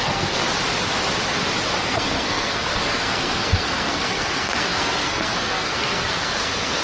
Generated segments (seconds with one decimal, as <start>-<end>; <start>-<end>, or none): 0.0-0.4; 1.8-6.8